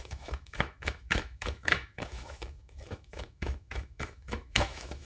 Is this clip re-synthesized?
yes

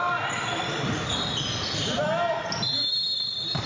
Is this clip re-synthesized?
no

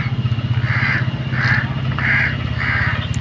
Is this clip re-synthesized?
no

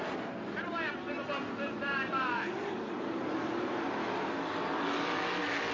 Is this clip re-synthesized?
no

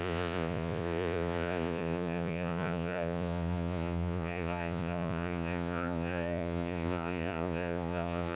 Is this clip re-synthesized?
yes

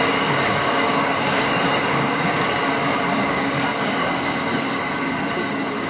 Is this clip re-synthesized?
yes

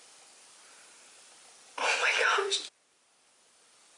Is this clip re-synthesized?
no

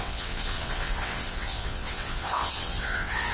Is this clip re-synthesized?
yes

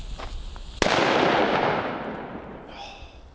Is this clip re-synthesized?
no